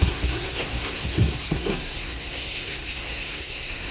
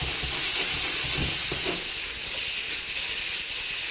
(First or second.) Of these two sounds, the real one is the second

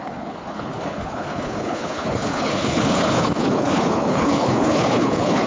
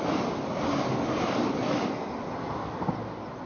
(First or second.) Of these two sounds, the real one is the second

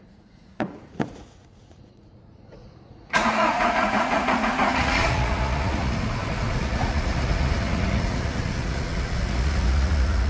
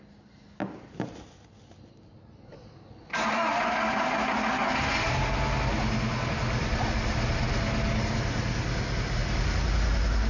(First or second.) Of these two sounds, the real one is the second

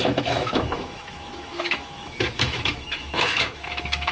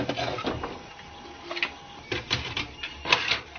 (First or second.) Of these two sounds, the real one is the second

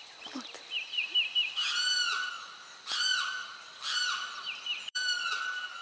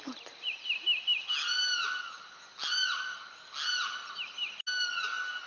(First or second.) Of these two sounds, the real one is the second